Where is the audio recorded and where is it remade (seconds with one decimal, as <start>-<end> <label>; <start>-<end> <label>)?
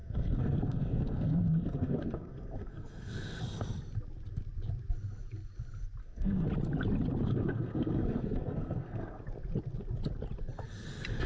0.0-3.4 remade; 3.4-6.0 recorded; 6.0-6.5 remade; 6.5-7.3 recorded; 7.3-9.2 remade; 9.2-11.3 recorded